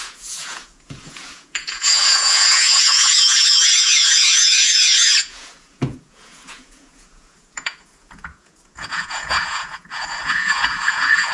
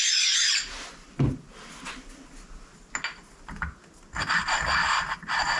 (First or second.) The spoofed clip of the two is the first